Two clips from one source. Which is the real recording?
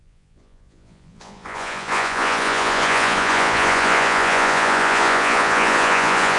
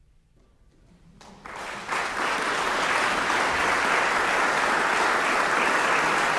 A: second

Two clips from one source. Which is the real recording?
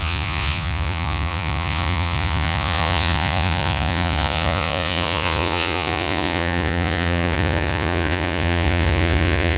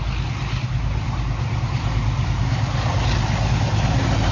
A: second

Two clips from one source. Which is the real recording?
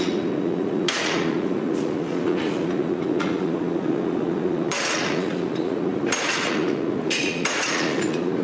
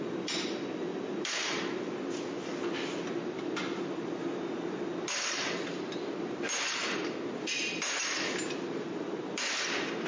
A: second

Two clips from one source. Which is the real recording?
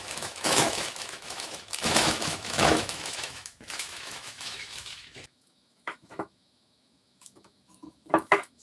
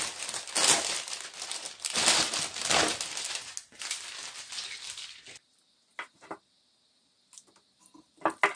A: second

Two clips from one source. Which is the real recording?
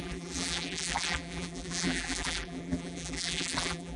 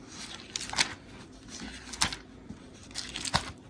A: second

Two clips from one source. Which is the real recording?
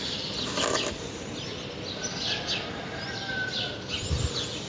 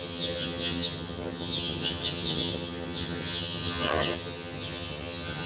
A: first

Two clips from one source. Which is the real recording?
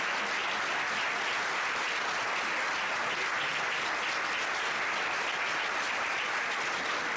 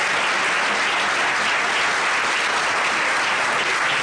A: second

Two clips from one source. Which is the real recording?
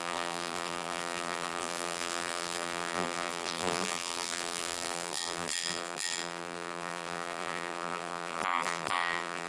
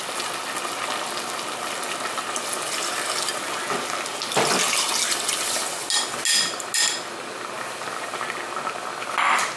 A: second